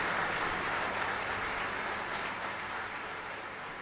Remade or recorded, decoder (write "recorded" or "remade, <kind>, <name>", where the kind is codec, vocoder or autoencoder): remade, vocoder, BigVGAN v2